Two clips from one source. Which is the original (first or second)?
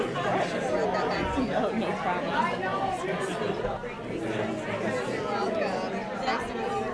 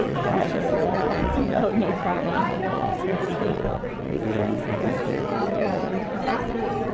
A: first